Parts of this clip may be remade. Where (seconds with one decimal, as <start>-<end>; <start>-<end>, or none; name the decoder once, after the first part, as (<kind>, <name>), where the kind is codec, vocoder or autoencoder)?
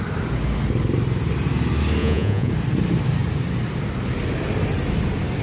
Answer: 2.0-2.5 (vocoder, Vocos)